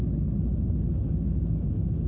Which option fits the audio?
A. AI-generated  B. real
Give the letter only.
B